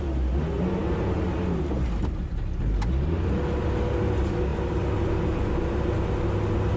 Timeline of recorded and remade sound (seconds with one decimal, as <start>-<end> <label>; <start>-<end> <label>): 0.0-6.8 recorded